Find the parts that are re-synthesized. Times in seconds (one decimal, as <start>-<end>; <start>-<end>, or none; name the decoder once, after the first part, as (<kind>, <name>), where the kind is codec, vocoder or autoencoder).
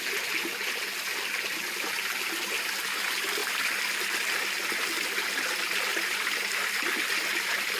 5.9-7.0 (vocoder, BigVGAN v2)